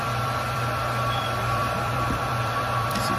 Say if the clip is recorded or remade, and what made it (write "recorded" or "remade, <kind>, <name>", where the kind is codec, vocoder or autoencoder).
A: remade, vocoder, BigVGAN v2